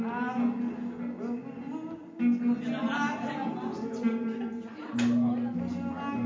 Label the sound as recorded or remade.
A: recorded